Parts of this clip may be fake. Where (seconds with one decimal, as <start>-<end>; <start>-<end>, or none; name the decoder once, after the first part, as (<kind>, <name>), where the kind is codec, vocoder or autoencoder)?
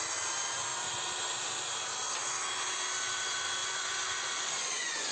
3.6-5.1 (vocoder, Vocos)